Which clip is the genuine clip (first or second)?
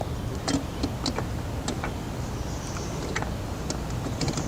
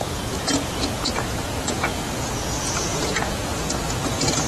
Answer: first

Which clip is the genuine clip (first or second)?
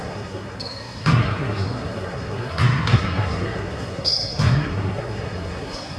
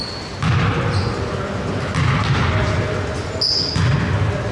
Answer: second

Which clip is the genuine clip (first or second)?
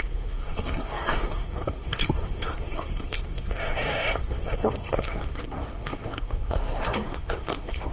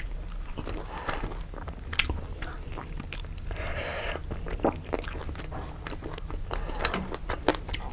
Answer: second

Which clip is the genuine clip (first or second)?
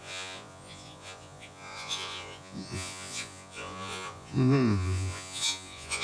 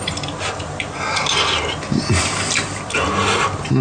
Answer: second